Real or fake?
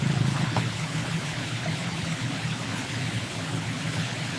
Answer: fake